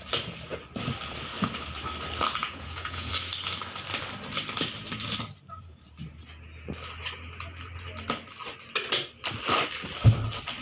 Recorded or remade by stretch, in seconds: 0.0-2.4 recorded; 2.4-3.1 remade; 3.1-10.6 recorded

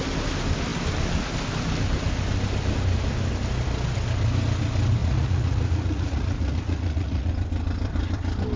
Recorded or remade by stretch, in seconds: 0.0-5.0 recorded; 5.0-7.3 remade; 7.3-8.6 recorded

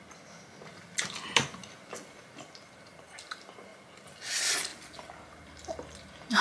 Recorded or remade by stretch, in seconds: 0.0-6.4 recorded

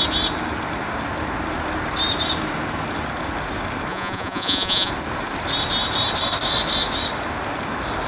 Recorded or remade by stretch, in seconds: 0.0-3.9 recorded; 3.9-4.9 remade; 4.9-8.1 recorded